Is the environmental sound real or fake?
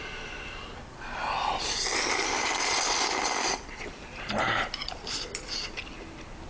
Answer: real